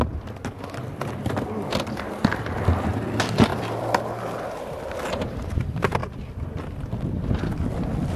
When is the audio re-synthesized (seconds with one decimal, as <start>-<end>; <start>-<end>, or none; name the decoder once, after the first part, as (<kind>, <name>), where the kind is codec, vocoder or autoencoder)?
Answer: 1.7-2.4 (vocoder, BigVGAN v2); 3.5-4.9